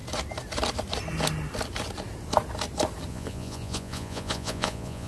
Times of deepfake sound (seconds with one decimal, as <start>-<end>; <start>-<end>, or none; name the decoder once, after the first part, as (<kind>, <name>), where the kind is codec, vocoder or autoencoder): 3.1-5.1 (vocoder, Vocos)